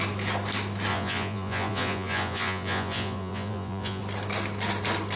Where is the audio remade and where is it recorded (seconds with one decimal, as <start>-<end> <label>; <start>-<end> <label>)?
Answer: 0.0-0.9 recorded; 0.9-4.0 remade; 4.0-5.2 recorded